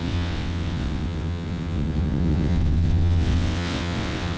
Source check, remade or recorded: remade